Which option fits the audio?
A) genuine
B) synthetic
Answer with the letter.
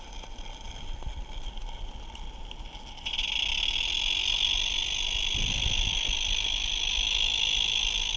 A